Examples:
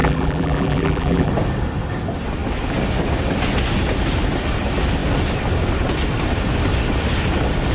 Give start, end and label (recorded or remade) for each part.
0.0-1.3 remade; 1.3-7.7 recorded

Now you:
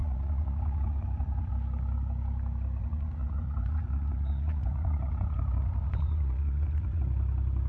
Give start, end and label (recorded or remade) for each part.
0.0-1.5 remade; 1.5-2.8 recorded; 2.8-7.0 remade; 7.0-7.7 recorded